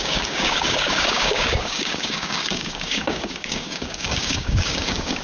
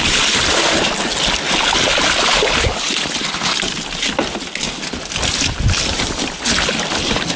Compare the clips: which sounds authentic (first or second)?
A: second